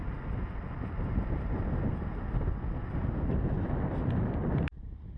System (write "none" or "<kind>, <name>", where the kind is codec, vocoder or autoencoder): none